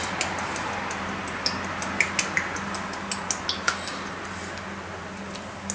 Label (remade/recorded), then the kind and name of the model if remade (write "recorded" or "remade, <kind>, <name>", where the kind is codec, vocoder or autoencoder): recorded